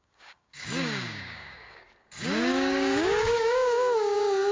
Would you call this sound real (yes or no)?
no